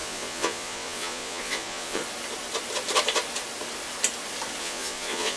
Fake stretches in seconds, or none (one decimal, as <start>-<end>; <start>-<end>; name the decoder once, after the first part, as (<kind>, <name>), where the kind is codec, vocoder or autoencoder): 0.0-2.0 (vocoder, Vocos); 4.6-5.4